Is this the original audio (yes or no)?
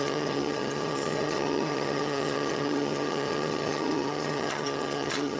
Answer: no